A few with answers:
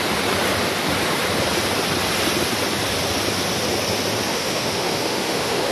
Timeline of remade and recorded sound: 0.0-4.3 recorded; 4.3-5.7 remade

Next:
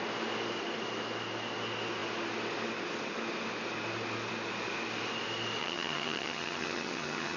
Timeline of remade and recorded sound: 0.0-5.6 recorded; 5.6-7.4 remade